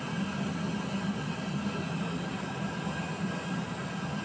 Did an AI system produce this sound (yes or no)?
no